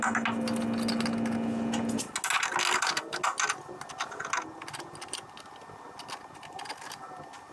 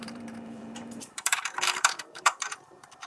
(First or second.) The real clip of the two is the first